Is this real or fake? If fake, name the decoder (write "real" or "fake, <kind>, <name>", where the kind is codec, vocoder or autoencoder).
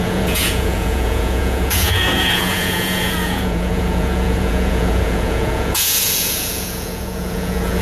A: fake, vocoder, Vocos